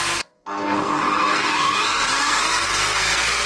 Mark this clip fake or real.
fake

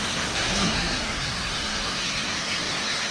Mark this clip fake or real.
fake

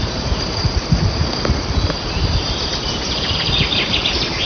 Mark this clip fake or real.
real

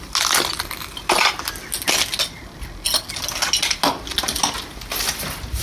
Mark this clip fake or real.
real